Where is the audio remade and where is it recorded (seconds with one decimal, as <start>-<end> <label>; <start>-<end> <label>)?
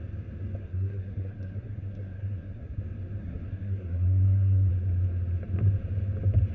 0.0-0.6 recorded; 0.6-2.8 remade; 2.8-3.2 recorded; 3.2-4.7 remade; 4.7-6.5 recorded